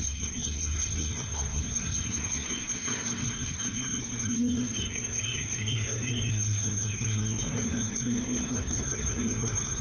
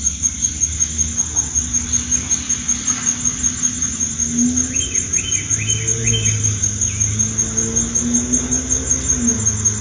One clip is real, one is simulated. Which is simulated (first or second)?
first